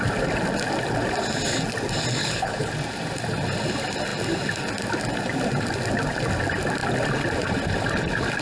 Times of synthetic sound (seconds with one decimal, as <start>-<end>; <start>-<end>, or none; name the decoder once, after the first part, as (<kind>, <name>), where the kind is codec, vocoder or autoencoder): 2.2-2.7 (codec, HILCodec)